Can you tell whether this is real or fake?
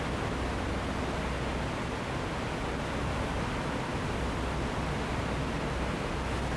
real